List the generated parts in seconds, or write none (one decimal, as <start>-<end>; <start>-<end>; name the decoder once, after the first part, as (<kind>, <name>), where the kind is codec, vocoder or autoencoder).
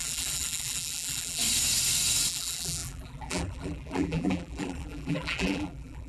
0.0-1.4 (vocoder, BigVGAN v2); 2.3-6.1